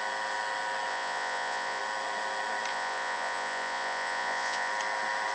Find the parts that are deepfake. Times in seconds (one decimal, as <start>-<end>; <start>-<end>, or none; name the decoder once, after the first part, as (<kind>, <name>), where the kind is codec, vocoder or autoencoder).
0.9-1.8 (vocoder, Vocos); 2.7-4.7